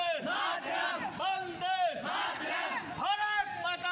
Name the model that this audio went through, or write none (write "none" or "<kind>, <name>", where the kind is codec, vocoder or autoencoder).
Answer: none